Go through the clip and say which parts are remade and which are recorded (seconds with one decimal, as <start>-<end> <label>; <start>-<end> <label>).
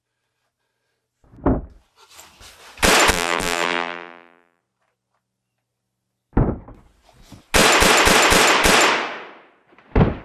0.0-3.1 recorded; 3.1-4.6 remade; 4.6-10.2 recorded